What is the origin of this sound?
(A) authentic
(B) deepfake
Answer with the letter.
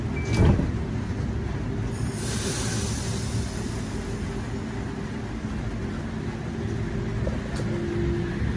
A